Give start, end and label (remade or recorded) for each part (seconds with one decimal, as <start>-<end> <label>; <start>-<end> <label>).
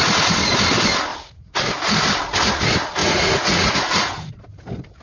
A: 0.0-1.1 recorded; 1.1-1.6 remade; 1.6-3.0 recorded; 3.0-4.3 remade; 4.3-5.0 recorded